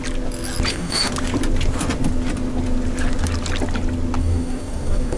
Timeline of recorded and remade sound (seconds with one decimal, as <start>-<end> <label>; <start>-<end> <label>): 0.0-0.7 recorded; 0.7-1.1 remade; 1.1-4.2 recorded; 4.2-5.2 remade